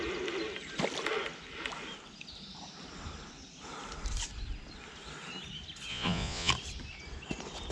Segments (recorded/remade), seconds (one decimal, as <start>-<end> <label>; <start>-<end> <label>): 0.0-5.9 recorded; 5.9-6.5 remade; 6.5-7.7 recorded